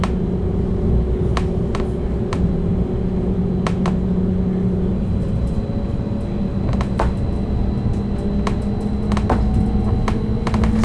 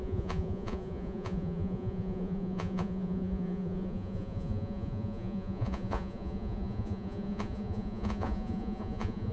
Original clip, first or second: first